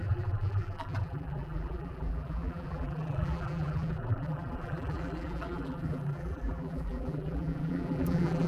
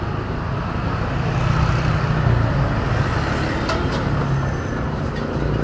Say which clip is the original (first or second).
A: second